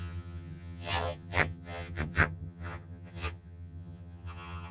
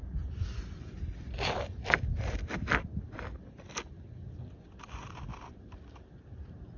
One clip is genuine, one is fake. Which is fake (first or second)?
first